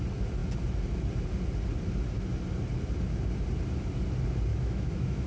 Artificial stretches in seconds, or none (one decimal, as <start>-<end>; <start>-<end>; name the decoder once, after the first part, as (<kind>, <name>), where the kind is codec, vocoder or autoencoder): 4.5-5.3 (autoencoder, DAC-VAE)